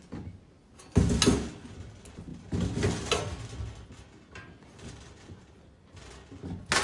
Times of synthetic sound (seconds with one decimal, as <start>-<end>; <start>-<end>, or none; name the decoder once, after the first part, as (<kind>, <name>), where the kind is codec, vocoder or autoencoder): none